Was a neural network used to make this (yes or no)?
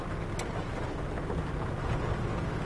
no